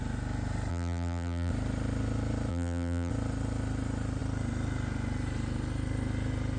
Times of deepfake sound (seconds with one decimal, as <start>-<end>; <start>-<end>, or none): 0.7-1.5; 2.5-3.1